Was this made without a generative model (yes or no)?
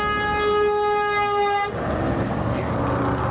yes